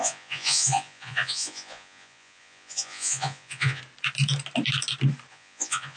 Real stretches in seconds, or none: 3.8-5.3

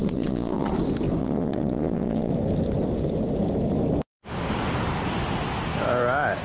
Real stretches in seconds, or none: 0.7-1.2; 2.3-6.4

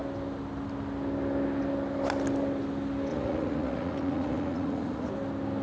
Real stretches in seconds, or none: 0.0-3.1; 5.1-5.6

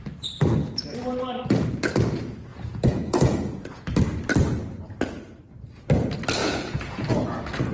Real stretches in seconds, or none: 0.0-2.5; 3.8-6.4; 7.1-7.7

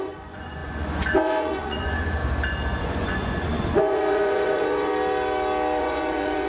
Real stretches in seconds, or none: 2.2-2.8; 4.9-5.8

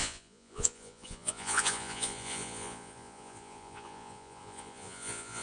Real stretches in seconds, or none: none

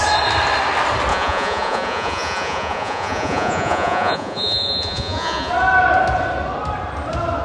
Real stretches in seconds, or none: 0.0-1.1; 5.5-7.4

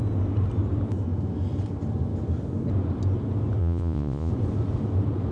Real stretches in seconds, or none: 0.0-3.6; 4.3-5.3